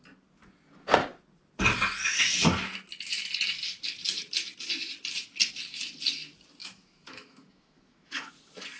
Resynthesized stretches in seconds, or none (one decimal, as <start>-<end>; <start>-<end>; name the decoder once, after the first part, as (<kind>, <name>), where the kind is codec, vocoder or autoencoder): 6.6-8.3 (autoencoder, DAC-VAE)